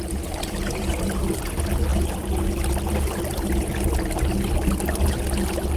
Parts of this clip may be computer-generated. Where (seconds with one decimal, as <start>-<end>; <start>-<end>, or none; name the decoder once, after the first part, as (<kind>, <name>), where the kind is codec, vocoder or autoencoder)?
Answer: none